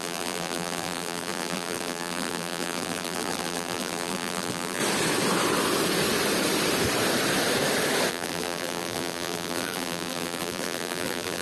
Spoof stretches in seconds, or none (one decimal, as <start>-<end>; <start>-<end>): 0.0-4.8; 8.1-11.4